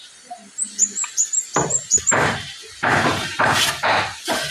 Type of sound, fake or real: real